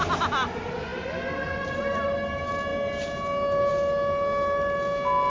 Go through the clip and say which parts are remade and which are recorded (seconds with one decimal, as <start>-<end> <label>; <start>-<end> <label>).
0.0-5.3 recorded